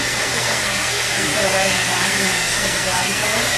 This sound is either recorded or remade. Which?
remade